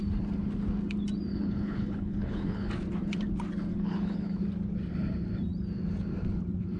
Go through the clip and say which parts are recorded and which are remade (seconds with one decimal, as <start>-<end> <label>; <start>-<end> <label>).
0.0-1.3 recorded; 1.3-2.7 remade; 2.7-3.7 recorded; 3.7-4.4 remade; 4.4-6.8 recorded